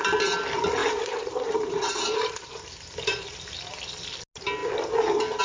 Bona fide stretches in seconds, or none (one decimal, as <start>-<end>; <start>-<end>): 0.0-0.8; 3.5-5.4

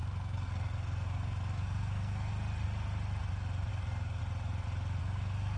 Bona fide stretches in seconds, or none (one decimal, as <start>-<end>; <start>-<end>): 2.3-3.7; 4.2-5.0